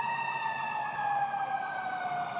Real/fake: real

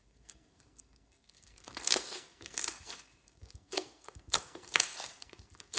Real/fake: fake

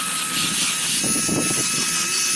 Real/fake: real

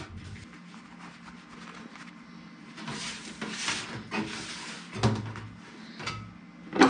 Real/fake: real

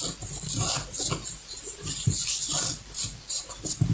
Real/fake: real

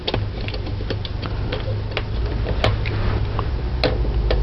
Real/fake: real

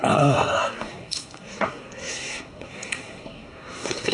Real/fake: fake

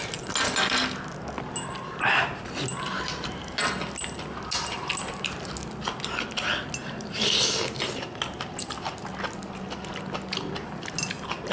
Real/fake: real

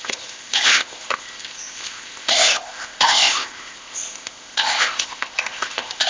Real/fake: fake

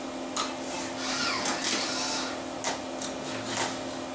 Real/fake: real